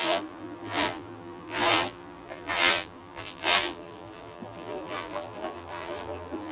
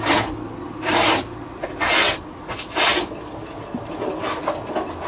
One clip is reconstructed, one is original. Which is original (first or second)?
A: second